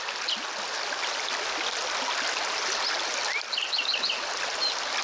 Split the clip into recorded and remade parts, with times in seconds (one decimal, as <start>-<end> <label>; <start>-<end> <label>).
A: 0.0-5.0 recorded